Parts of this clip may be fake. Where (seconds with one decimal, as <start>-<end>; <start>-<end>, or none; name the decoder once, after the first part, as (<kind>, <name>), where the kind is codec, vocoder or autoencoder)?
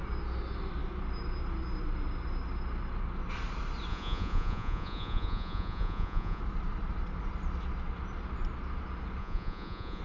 3.9-6.4 (vocoder, Vocos); 9.2-10.0